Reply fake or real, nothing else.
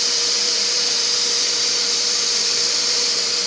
fake